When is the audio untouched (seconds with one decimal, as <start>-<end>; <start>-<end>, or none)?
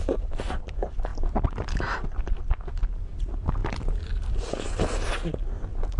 0.0-6.0